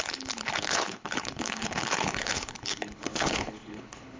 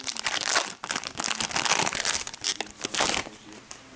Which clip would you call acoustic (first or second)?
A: second